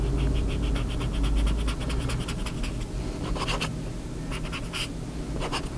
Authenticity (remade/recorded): recorded